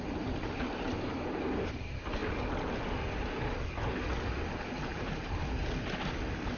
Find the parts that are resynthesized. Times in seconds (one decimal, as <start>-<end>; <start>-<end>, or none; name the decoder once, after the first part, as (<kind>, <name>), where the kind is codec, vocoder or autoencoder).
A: 4.9-5.6 (vocoder, BigVGAN v2)